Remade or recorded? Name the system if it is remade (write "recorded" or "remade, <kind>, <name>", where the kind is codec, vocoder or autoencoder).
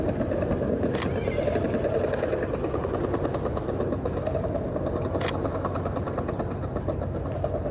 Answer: recorded